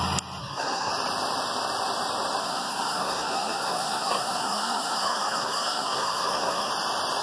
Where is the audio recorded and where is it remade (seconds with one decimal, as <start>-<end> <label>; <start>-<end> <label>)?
0.0-0.4 recorded; 0.4-0.9 remade; 0.9-2.4 recorded; 2.4-6.7 remade; 6.7-7.2 recorded

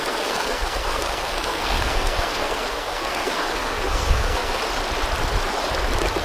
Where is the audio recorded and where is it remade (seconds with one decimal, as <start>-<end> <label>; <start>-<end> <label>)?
0.0-4.6 remade; 4.6-6.2 recorded

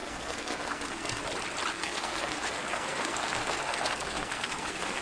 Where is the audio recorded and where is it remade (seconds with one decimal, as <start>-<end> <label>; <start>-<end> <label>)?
0.0-1.2 remade; 1.2-1.7 recorded; 1.7-5.0 remade

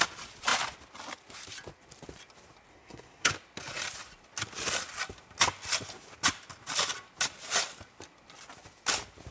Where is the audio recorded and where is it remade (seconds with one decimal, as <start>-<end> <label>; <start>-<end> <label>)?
0.0-2.7 recorded; 2.7-3.3 remade; 3.3-9.3 recorded

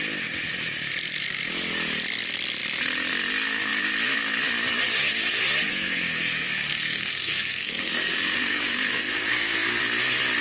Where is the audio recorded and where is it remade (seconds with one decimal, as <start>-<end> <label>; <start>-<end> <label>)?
0.0-5.7 recorded; 5.7-9.8 remade; 9.8-10.4 recorded

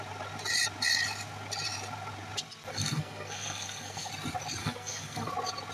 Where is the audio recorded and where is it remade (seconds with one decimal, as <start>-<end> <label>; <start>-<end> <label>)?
0.0-2.7 recorded; 2.7-4.1 remade; 4.1-4.6 recorded; 4.6-5.3 remade; 5.3-5.7 recorded